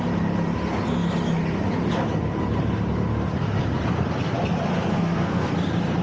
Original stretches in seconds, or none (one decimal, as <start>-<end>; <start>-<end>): 0.0-4.9; 5.5-6.0